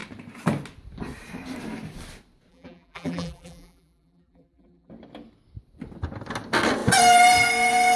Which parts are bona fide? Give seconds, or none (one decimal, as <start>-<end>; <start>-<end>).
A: 0.0-2.5; 4.9-8.0